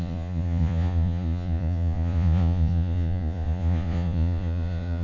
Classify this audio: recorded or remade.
remade